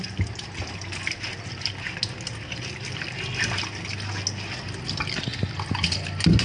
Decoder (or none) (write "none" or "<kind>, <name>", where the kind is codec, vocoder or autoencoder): none